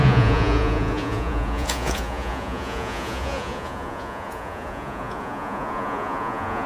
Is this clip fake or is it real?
fake